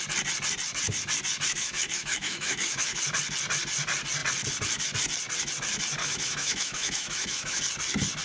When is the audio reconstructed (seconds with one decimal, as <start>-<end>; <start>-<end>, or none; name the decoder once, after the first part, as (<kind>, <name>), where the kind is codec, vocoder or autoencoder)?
1.6-3.0 (autoencoder, DAC-VAE); 6.0-7.6